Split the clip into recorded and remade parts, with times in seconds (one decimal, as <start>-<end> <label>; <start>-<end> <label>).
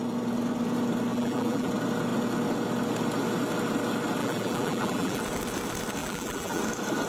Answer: 0.0-1.1 recorded; 1.1-1.7 remade; 1.7-4.2 recorded; 4.2-5.2 remade; 5.2-6.0 recorded; 6.0-6.6 remade; 6.6-7.1 recorded